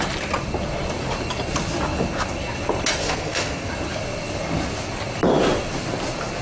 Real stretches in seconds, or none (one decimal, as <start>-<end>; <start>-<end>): 0.0-3.0; 3.7-6.4